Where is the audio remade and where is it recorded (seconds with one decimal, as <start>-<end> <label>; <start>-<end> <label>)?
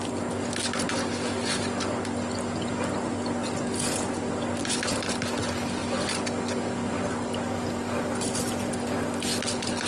0.0-9.9 recorded